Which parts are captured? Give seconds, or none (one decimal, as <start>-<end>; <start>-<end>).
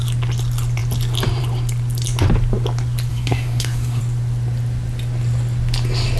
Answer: 0.0-3.1; 4.0-6.2